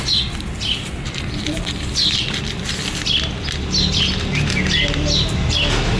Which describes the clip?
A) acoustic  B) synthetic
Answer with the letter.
A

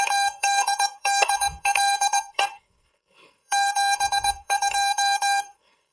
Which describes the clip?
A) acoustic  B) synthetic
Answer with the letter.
B